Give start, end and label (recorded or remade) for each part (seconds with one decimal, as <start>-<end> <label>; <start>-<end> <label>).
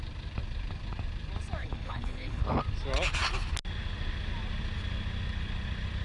0.0-1.6 recorded; 1.6-2.4 remade; 2.4-6.0 recorded